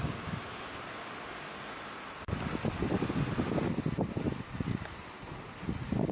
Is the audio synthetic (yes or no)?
no